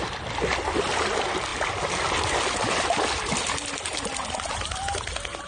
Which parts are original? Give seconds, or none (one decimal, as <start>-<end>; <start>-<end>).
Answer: 0.0-5.5